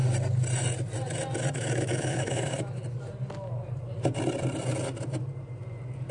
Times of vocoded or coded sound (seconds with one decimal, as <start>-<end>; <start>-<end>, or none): 1.5-2.8